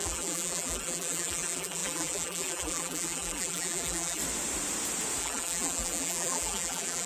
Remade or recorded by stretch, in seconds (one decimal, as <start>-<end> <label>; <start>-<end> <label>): 0.0-4.2 remade; 4.2-5.2 recorded; 5.2-7.1 remade